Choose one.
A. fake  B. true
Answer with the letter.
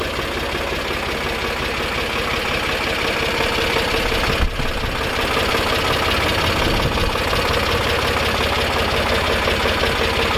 B